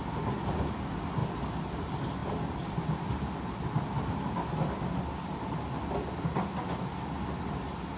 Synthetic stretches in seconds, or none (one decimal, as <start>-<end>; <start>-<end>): none